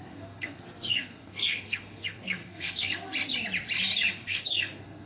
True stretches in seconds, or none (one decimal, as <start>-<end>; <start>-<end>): 3.1-4.1